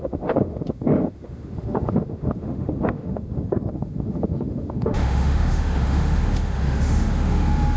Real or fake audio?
fake